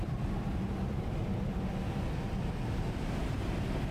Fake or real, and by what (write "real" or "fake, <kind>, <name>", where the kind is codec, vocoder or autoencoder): real